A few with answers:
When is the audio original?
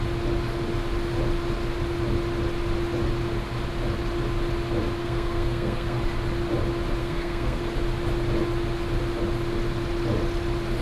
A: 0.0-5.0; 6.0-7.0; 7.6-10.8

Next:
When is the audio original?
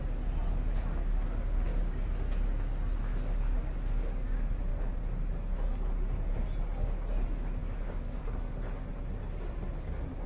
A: 0.0-7.6; 8.2-10.3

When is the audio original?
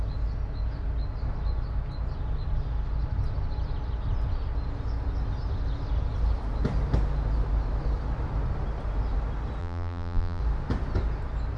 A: 0.0-9.6; 10.4-11.6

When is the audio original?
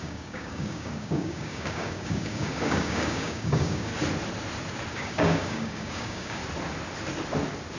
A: 3.9-4.9; 6.4-7.8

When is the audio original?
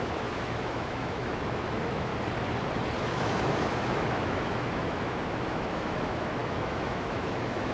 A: 2.1-3.0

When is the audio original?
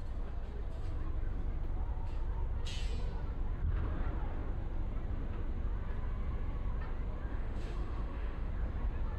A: 0.0-7.3; 8.5-9.2